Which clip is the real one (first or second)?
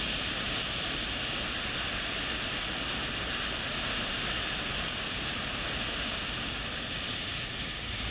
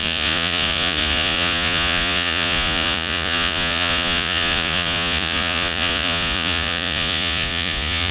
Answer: first